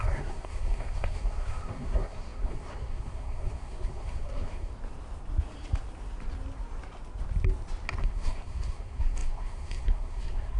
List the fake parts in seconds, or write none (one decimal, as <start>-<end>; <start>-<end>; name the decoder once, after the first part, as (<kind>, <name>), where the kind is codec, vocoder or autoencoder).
0.0-4.7 (codec, SNAC); 8.0-10.6